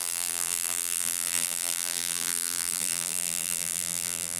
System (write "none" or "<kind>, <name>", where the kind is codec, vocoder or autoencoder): vocoder, BigVGAN v2